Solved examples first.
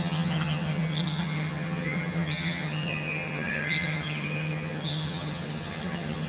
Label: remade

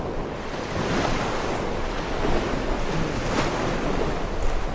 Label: recorded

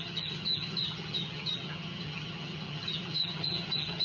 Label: remade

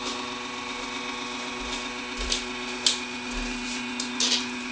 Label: recorded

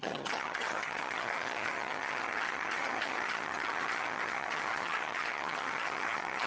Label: remade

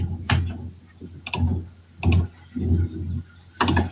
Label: recorded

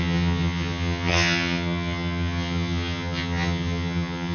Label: remade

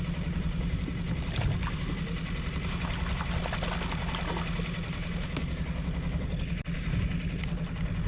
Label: recorded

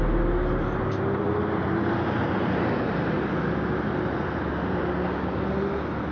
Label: recorded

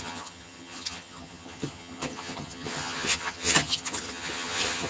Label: remade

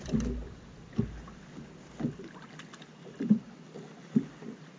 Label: recorded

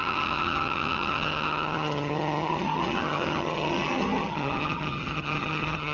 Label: remade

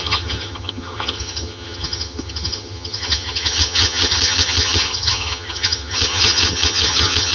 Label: remade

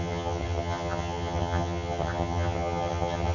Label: remade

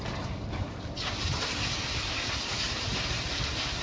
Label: recorded